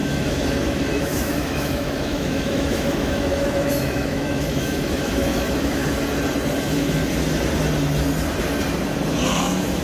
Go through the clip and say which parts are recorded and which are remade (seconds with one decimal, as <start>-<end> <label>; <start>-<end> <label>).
0.0-5.8 remade; 5.8-6.6 recorded; 6.6-7.0 remade; 7.0-9.4 recorded; 9.4-9.8 remade